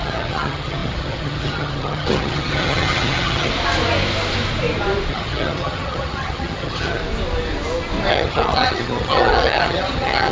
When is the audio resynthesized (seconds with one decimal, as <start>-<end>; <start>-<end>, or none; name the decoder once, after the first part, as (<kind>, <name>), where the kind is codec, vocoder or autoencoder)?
0.0-3.5 (vocoder, HiFi-GAN); 5.1-7.0; 8.1-10.3